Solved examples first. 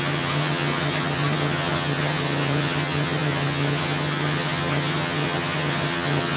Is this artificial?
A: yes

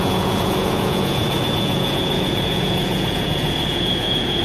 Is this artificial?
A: yes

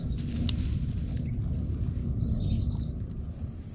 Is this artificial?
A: no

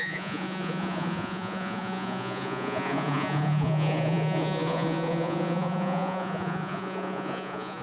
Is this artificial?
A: yes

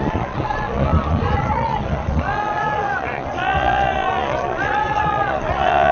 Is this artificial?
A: yes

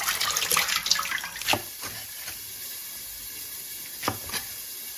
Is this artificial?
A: no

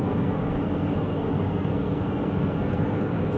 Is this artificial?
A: yes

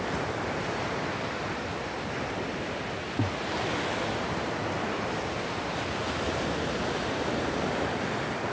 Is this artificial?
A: no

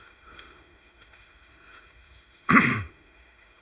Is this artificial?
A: yes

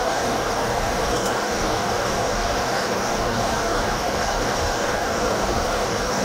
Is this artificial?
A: yes